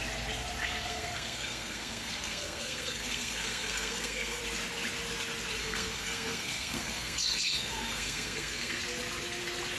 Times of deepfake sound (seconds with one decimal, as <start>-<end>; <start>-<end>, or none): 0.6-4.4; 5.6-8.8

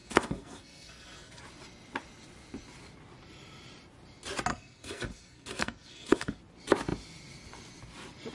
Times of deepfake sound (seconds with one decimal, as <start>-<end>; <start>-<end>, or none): 0.0-1.4; 4.5-6.4

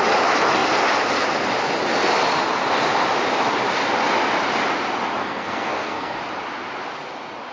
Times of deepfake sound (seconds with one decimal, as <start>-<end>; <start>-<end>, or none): 5.2-6.2

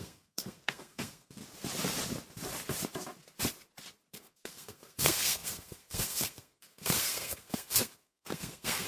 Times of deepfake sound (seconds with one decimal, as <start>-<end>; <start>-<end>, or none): 0.0-1.4; 4.1-8.9